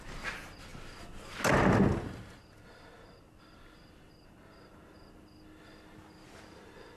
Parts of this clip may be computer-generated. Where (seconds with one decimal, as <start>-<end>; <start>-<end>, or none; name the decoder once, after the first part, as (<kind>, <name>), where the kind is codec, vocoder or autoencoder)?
none